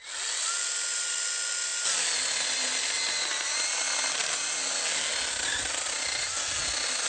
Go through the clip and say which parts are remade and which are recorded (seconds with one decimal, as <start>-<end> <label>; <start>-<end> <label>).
0.0-7.1 recorded